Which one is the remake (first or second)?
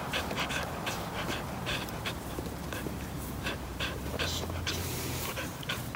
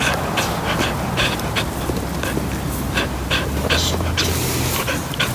first